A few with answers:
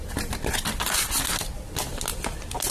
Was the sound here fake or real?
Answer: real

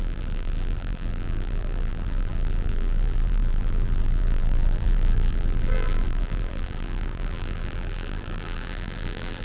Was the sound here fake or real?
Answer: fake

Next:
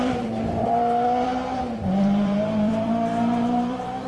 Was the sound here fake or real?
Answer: fake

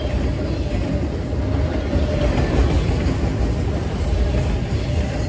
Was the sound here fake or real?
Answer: real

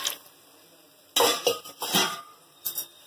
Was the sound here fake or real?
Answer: real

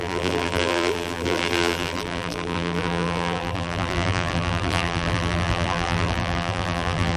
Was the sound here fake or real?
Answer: fake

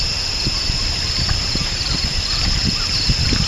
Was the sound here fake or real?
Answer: fake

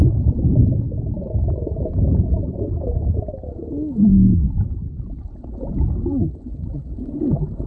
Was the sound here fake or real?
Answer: real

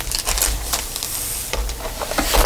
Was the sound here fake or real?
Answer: real